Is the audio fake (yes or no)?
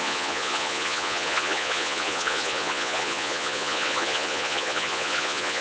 yes